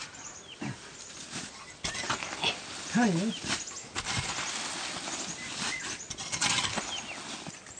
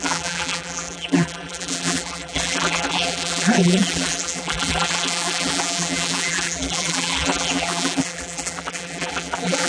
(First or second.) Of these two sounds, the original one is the first